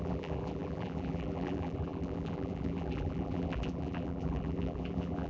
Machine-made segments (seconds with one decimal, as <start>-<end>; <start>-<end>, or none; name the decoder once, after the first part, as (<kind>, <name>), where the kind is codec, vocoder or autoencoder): 0.0-5.3 (vocoder, BigVGAN v2)